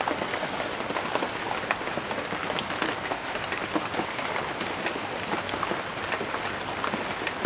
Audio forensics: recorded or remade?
recorded